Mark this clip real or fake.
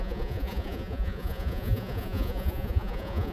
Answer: fake